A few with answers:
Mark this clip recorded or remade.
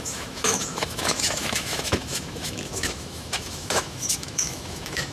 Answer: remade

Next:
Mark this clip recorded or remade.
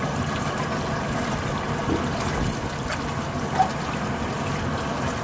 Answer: recorded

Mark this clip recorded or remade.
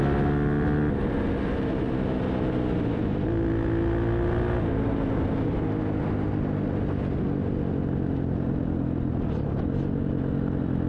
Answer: recorded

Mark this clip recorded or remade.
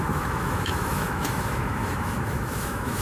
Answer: remade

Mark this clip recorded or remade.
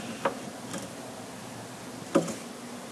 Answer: recorded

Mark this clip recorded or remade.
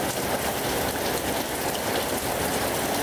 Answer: recorded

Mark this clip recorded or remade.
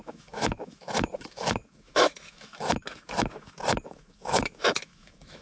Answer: remade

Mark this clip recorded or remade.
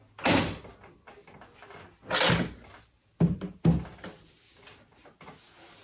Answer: recorded